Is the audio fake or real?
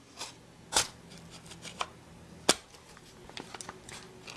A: real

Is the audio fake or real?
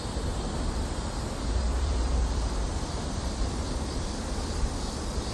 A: fake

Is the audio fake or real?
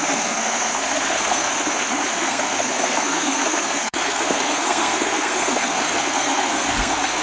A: fake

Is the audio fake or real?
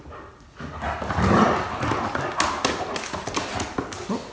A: real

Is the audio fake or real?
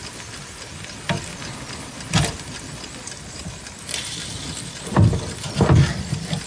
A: real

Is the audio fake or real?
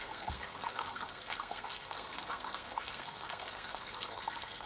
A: fake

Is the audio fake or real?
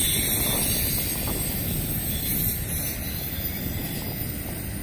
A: real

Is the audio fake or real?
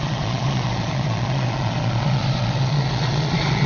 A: fake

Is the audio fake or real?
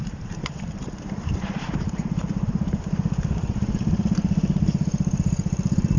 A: fake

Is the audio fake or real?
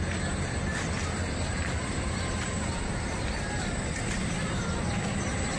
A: real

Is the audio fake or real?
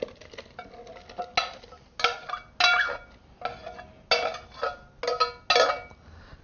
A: real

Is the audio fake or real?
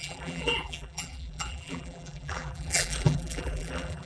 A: fake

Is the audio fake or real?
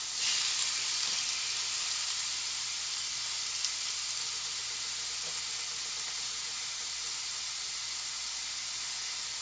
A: real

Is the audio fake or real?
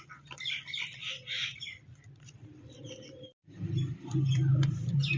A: fake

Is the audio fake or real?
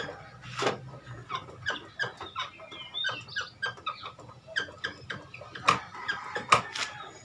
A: real